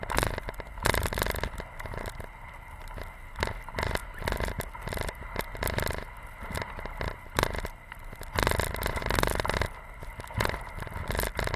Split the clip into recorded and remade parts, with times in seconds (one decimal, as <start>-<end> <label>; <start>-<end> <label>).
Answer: 0.0-11.6 recorded